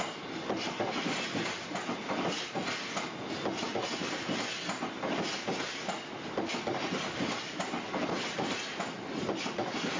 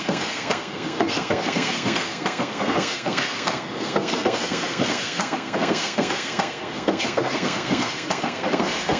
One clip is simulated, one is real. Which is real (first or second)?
first